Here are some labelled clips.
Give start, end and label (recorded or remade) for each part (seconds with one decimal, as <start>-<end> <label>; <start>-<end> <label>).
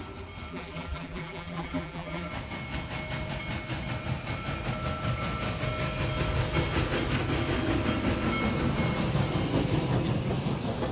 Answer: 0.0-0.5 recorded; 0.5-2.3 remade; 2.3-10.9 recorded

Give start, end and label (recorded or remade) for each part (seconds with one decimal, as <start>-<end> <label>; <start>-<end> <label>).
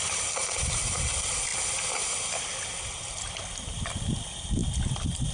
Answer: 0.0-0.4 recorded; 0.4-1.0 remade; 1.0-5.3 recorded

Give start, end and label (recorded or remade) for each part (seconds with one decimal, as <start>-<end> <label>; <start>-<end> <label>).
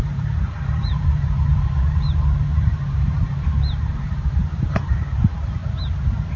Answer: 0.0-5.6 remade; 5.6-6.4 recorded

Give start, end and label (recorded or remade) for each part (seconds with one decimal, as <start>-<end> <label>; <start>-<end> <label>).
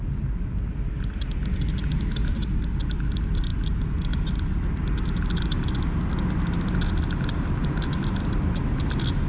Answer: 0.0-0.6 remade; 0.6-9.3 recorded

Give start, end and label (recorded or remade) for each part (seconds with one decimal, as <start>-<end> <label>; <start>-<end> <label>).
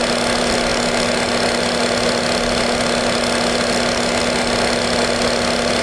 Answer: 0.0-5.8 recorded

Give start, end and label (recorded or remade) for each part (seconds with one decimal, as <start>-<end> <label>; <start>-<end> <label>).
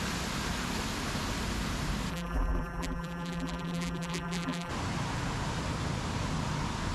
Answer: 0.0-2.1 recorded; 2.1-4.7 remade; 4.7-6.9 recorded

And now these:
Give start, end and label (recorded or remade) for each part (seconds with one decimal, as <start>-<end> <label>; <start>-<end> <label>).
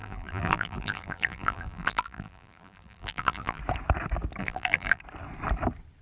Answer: 0.0-3.6 remade; 3.6-4.4 recorded; 4.4-5.0 remade; 5.0-6.0 recorded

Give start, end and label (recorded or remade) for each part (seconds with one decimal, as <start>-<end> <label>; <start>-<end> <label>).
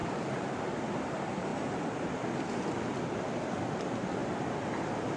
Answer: 0.0-0.5 remade; 0.5-4.2 recorded; 4.2-4.7 remade; 4.7-5.2 recorded